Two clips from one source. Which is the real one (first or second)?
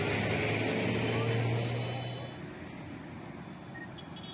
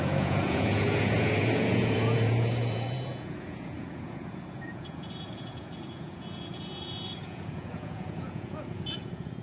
first